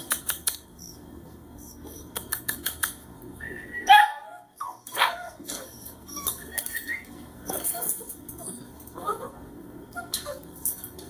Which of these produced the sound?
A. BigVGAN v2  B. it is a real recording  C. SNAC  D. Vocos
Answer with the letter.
C